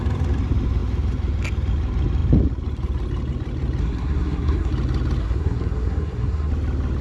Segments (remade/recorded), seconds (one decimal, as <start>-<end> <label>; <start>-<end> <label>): 0.0-3.8 recorded; 3.8-4.7 remade; 4.7-5.2 recorded; 5.2-6.5 remade; 6.5-7.0 recorded